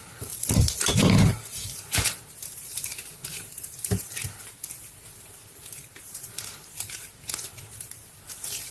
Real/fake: fake